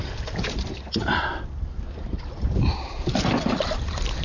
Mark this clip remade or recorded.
remade